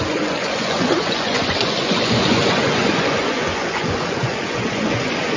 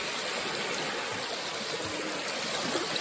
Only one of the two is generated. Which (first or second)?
first